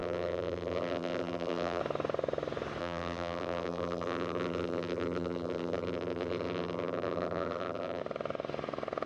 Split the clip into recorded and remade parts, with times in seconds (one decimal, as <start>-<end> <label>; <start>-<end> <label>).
0.0-1.8 remade; 1.8-2.8 recorded; 2.8-8.0 remade; 8.0-9.1 recorded